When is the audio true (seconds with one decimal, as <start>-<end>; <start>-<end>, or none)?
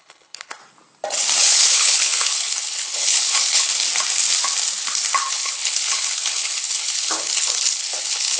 0.6-1.4; 3.7-5.2